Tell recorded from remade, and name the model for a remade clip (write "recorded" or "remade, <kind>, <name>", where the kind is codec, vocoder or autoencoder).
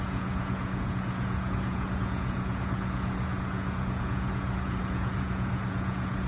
remade, vocoder, Vocos